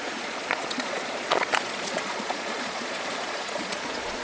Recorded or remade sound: remade